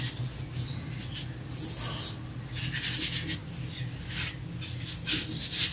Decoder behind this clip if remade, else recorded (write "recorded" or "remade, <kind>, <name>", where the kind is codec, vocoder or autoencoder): recorded